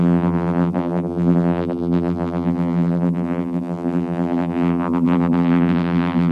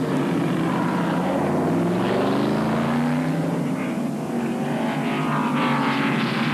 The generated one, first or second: first